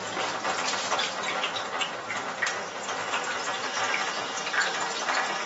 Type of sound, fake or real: real